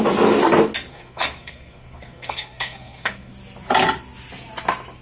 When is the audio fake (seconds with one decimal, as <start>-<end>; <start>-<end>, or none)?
0.9-3.3